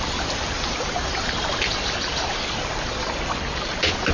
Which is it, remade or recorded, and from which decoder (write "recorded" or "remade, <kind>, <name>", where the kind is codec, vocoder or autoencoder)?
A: recorded